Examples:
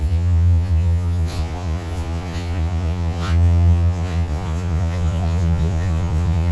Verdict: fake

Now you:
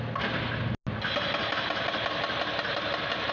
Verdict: real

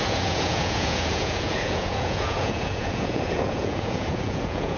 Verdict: fake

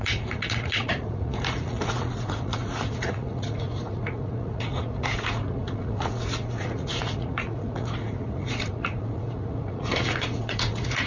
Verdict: fake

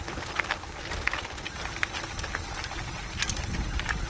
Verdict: real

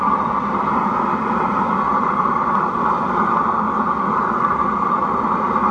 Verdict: real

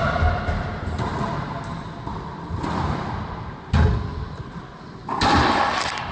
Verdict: real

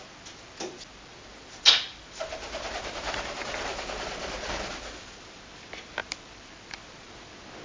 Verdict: real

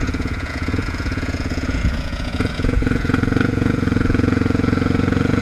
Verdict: fake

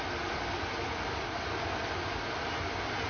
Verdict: real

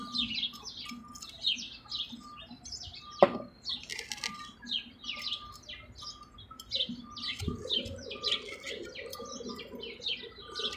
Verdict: real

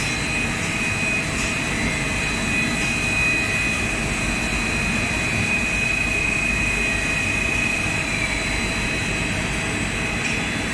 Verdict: real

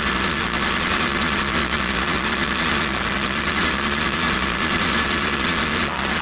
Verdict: fake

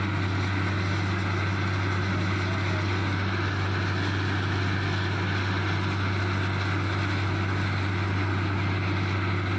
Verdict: real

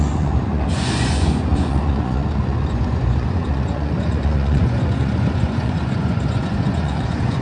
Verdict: fake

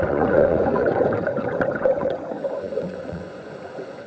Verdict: fake